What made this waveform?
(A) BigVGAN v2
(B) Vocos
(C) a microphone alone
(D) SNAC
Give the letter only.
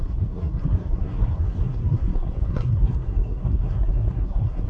D